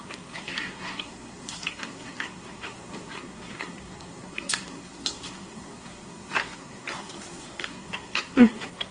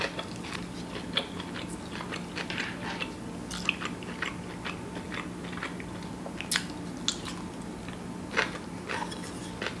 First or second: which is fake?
first